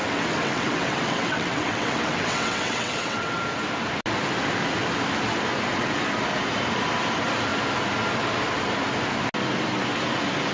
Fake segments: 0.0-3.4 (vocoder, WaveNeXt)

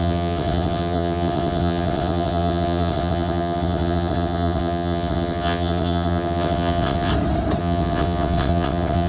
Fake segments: 0.0-7.1 (vocoder, WaveNeXt); 7.6-9.1

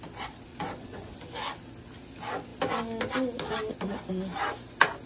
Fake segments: 0.5-1.2 (vocoder, WaveNeXt)

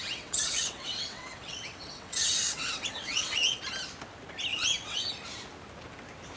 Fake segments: 0.0-3.6 (vocoder, WaveNeXt); 4.5-5.1

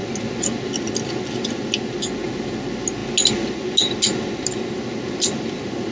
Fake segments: none

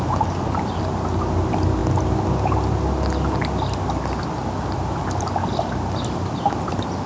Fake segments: none

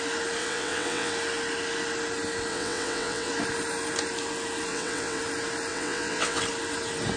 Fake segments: 0.4-1.1 (vocoder, WaveNeXt); 2.5-3.3; 4.7-5.2; 5.7-6.4